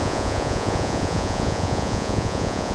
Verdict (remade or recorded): remade